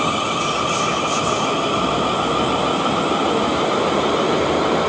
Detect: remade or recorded recorded